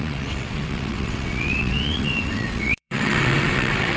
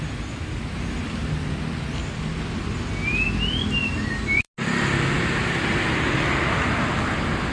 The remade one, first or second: first